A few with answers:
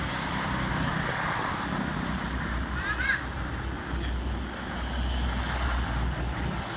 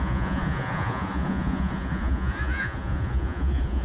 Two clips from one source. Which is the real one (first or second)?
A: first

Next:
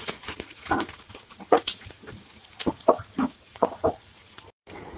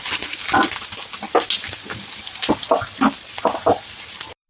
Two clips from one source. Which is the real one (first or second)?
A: second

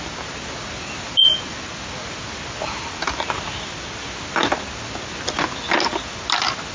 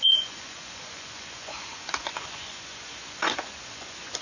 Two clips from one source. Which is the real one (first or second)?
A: first